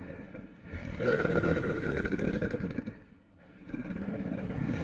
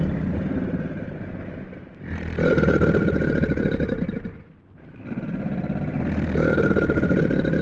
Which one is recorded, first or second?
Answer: second